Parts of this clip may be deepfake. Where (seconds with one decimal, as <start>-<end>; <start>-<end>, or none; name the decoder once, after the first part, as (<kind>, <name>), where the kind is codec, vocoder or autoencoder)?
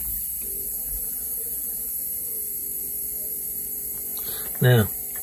0.7-1.9 (vocoder, BigVGAN v2)